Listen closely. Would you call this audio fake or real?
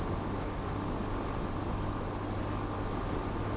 real